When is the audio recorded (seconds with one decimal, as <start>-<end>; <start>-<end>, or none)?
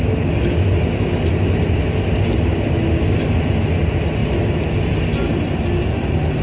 0.0-6.4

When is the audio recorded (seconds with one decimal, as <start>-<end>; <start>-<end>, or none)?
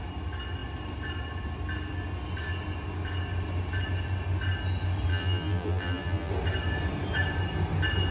0.0-5.1; 6.3-8.1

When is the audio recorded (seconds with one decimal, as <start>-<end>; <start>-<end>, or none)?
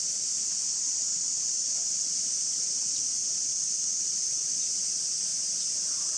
none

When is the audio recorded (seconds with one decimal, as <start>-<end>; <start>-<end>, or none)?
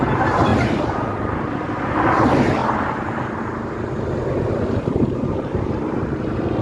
2.6-4.6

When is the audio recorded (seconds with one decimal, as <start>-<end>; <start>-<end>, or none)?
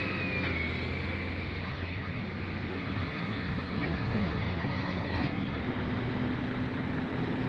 0.0-1.6; 2.2-2.7; 5.6-7.5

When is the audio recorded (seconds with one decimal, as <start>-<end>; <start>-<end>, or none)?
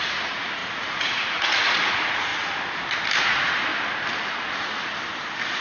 2.3-3.2; 3.7-5.6